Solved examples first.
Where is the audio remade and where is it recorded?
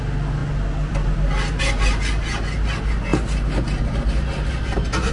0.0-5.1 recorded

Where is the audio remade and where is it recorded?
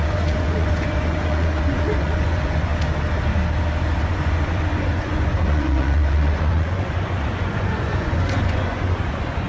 0.0-2.7 remade; 2.7-4.0 recorded; 4.0-9.5 remade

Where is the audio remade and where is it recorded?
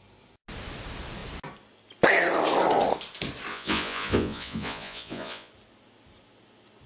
0.0-3.5 recorded; 3.5-5.5 remade; 5.5-6.9 recorded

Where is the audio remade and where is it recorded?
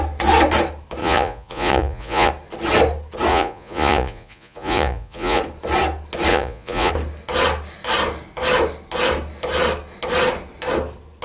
0.0-1.0 recorded; 1.0-2.3 remade; 2.3-3.3 recorded; 3.3-5.4 remade; 5.4-6.3 recorded; 6.3-6.9 remade; 6.9-11.2 recorded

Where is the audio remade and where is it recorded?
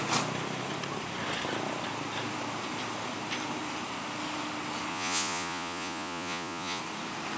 0.0-4.9 recorded; 4.9-6.8 remade; 6.8-7.4 recorded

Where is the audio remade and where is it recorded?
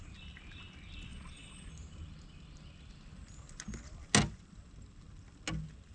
0.0-1.1 recorded; 1.1-1.7 remade; 1.7-5.9 recorded